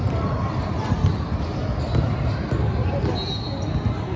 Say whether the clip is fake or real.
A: real